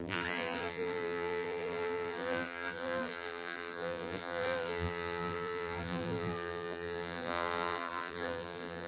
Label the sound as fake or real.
fake